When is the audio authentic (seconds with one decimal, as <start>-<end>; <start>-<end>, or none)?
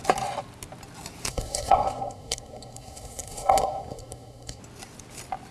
0.0-1.3; 4.6-5.5